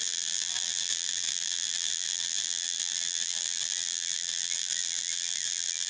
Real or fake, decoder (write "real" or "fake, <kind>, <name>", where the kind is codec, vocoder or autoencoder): fake, vocoder, BigVGAN v2